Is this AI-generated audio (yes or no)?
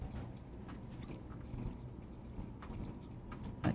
no